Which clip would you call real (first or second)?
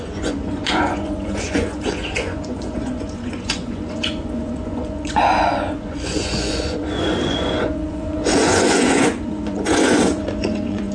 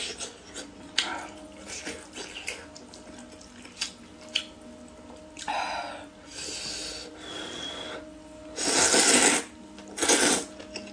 second